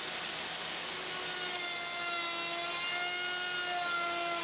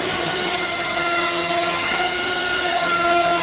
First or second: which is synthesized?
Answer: second